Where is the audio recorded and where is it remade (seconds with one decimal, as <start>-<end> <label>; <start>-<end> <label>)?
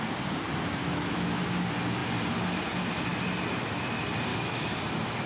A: 0.0-0.8 recorded; 0.8-1.5 remade; 1.5-4.3 recorded; 4.3-4.8 remade; 4.8-5.3 recorded